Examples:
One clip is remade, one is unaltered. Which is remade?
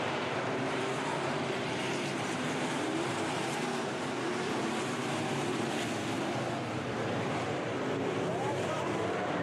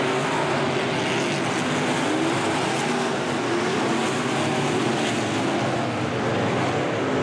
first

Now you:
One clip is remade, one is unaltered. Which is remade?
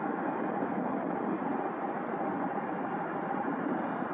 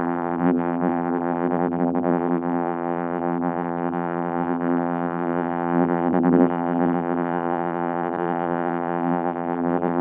second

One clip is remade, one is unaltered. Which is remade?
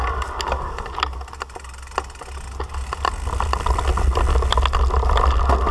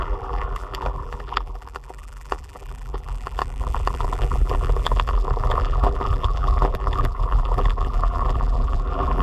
second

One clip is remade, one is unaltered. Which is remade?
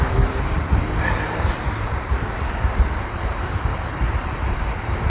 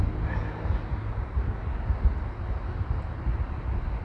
first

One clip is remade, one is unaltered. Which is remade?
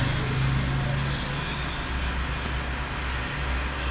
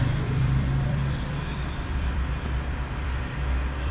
second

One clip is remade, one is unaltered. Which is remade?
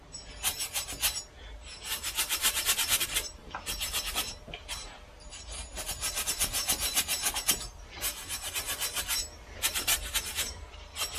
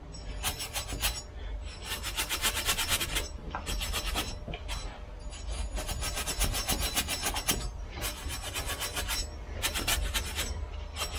first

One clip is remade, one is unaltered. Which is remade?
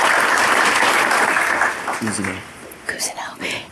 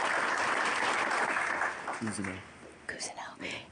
first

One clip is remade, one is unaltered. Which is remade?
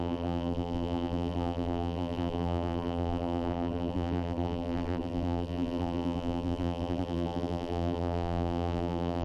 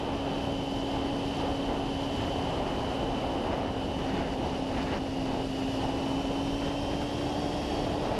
first